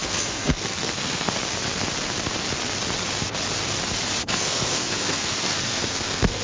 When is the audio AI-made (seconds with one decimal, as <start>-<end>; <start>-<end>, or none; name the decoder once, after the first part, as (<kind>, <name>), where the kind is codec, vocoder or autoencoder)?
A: 0.0-1.3 (codec, SNAC); 4.2-6.4